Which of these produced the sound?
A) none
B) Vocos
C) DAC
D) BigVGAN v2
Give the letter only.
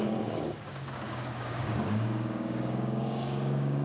C